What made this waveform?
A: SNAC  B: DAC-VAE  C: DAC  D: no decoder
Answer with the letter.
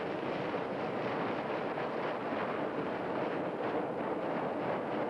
D